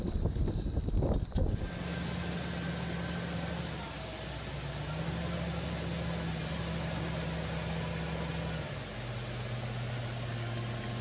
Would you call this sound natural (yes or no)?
yes